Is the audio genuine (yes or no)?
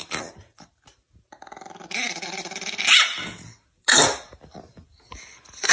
yes